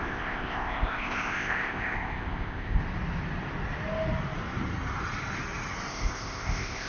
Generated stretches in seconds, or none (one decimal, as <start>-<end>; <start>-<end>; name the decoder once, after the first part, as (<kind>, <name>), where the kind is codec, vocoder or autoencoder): 0.0-2.8 (codec, ZipCodec); 5.9-6.9